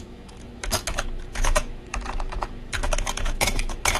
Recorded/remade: remade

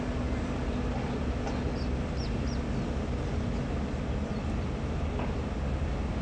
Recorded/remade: recorded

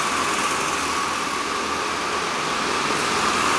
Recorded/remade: recorded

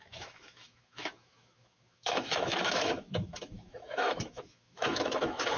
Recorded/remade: remade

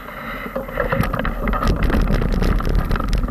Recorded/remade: recorded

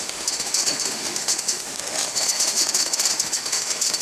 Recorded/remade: remade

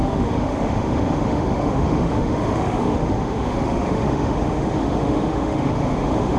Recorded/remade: remade